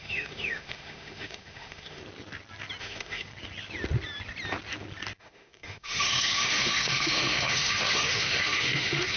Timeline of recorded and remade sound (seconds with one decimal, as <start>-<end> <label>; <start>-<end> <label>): 0.0-2.0 remade; 2.0-2.8 recorded; 2.8-3.3 remade; 3.3-5.2 recorded; 5.2-9.2 remade